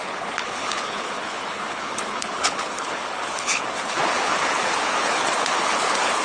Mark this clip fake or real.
fake